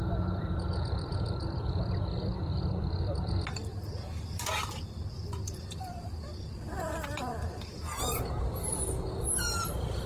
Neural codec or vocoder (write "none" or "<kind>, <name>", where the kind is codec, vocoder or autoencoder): vocoder, BigVGAN v2